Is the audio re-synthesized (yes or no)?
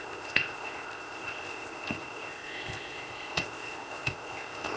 yes